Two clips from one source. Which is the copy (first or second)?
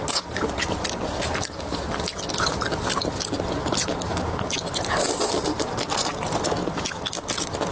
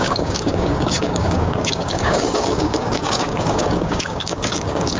second